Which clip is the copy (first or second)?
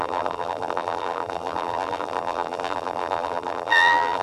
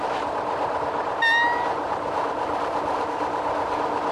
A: first